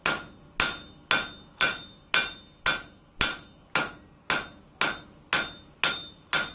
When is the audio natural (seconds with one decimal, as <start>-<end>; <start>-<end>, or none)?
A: 0.0-1.5; 2.0-5.9